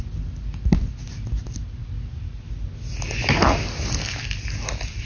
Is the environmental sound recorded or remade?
recorded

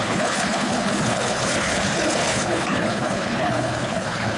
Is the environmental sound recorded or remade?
remade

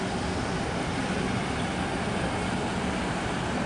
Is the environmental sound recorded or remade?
recorded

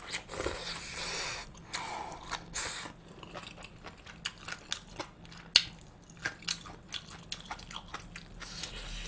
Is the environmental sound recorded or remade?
recorded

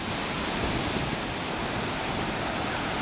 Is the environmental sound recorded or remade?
recorded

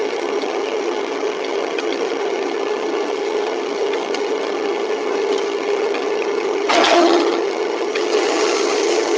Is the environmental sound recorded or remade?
remade